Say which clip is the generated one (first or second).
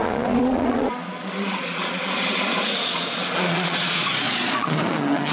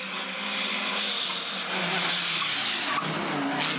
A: first